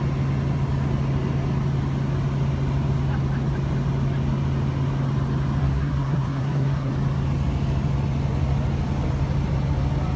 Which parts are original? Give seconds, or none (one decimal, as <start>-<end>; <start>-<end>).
0.0-5.6; 6.9-10.2